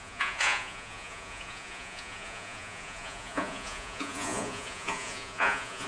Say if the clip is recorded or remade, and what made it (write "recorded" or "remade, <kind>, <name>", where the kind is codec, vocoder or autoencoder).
remade, vocoder, Vocos